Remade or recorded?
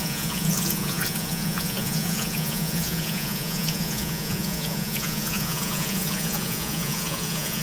remade